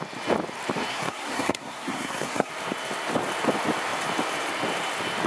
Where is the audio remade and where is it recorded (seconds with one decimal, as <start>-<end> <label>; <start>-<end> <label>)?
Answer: 0.0-0.9 recorded; 0.9-2.5 remade; 2.5-5.3 recorded